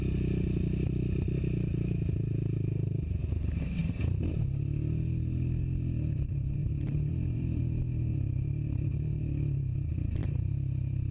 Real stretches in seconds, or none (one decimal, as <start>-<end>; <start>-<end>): 0.0-6.6; 7.6-10.2